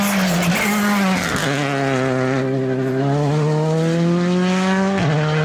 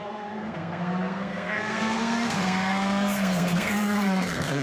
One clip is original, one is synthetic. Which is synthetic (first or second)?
second